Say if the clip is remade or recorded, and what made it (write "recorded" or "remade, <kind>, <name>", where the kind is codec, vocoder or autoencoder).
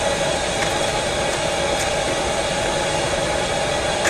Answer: recorded